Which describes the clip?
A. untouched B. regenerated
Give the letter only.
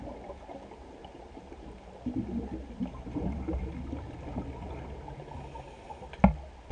A